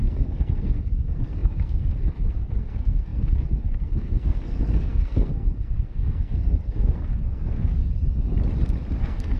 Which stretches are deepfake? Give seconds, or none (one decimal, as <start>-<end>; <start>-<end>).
0.0-7.8; 9.0-9.4